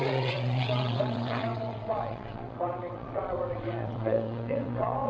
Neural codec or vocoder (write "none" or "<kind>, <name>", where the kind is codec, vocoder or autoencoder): vocoder, WaveNeXt